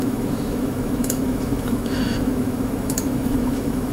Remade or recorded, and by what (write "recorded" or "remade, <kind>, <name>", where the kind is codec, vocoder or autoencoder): remade, autoencoder, DAC-VAE